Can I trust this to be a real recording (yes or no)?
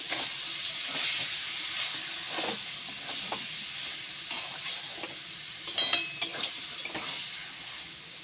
yes